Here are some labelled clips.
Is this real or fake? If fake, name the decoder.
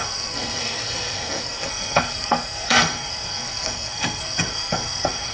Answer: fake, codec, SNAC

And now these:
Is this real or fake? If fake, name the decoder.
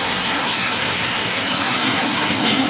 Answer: fake, codec, SNAC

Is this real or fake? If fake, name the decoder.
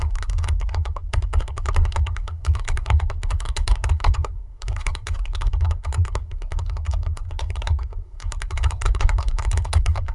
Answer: fake, codec, SNAC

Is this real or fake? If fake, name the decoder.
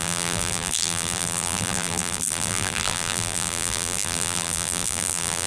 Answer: fake, vocoder, BigVGAN v2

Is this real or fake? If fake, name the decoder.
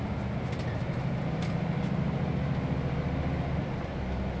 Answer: real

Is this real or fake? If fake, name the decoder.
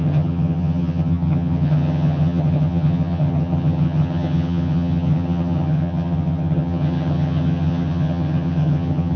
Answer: fake, vocoder, HiFi-GAN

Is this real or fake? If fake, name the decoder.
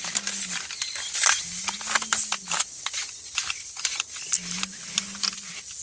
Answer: real